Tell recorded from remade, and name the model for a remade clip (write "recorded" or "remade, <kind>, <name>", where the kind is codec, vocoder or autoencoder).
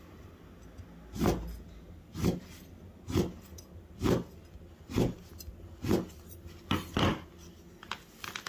recorded